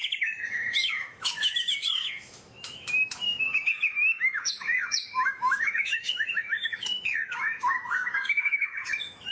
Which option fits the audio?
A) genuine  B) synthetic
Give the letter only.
B